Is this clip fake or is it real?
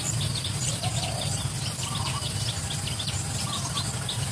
real